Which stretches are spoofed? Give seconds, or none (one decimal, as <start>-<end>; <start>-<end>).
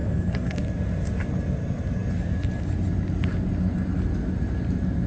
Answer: 0.0-0.6